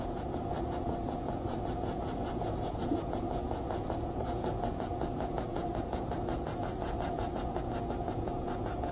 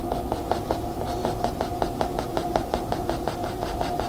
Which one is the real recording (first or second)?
second